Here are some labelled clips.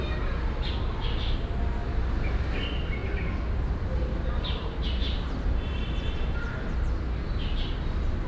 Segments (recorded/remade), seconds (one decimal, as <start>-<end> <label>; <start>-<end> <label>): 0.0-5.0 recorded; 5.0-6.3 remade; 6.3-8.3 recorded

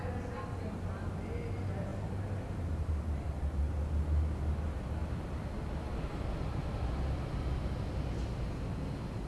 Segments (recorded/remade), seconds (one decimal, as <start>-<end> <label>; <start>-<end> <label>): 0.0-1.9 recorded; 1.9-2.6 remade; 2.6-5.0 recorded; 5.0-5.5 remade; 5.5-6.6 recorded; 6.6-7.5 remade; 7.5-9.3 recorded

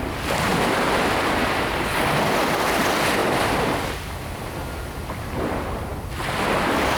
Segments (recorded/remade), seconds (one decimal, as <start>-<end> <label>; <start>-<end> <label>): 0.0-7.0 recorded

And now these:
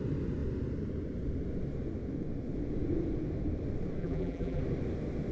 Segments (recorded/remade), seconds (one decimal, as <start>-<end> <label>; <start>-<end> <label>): 0.0-4.0 recorded; 4.0-4.6 remade; 4.6-5.3 recorded